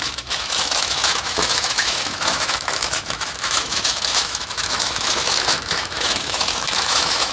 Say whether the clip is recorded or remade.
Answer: remade